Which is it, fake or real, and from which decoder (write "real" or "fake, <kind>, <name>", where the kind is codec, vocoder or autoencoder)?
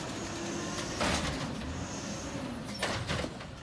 real